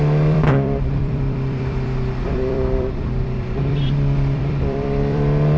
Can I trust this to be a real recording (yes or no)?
no